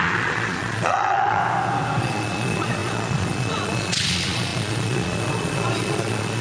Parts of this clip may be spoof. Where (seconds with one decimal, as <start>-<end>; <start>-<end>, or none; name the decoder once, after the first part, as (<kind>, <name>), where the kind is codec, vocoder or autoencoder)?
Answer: 0.0-1.4 (vocoder, Vocos); 2.0-6.4